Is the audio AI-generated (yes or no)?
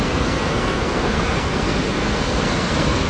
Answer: yes